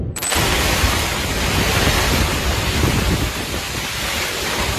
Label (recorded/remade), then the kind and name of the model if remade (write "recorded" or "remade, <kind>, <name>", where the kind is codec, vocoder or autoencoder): remade, vocoder, BigVGAN v2